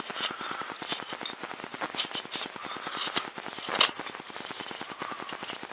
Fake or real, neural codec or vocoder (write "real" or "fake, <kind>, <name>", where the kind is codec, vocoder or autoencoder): real